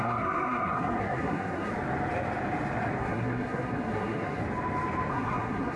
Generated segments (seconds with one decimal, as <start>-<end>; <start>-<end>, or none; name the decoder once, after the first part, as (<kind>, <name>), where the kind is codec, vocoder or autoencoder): 0.0-1.7 (codec, SNAC); 3.0-4.4; 5.1-5.8